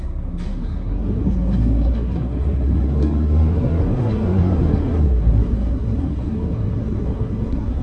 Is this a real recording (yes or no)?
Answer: no